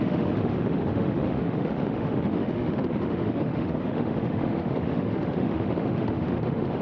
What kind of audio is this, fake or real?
fake